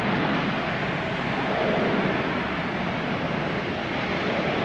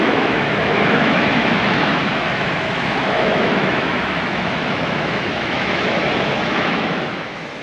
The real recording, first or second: first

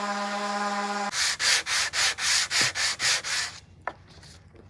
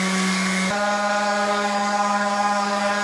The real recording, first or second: first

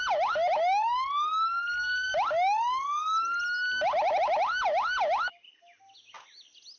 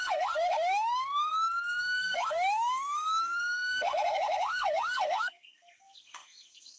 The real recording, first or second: first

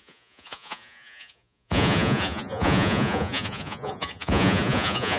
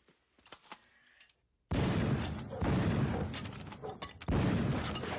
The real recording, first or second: second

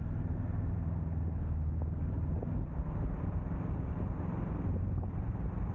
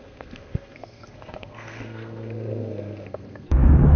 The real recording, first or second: first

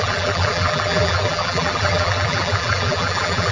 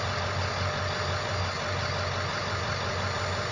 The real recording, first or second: second